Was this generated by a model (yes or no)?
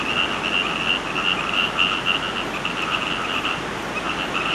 no